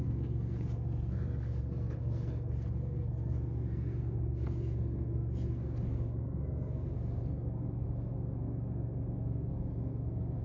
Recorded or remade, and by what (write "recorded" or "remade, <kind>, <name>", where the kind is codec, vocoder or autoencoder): remade, codec, SNAC